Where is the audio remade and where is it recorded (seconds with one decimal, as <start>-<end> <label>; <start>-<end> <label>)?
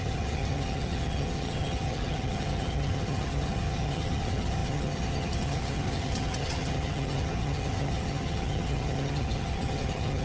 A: 0.0-10.2 remade